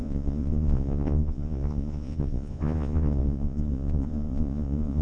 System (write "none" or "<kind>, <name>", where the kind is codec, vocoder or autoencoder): vocoder, Vocos